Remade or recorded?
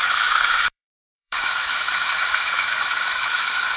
remade